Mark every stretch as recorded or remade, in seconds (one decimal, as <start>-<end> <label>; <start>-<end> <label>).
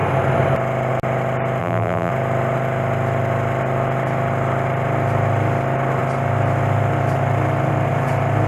0.0-1.6 recorded; 1.6-2.1 remade; 2.1-8.5 recorded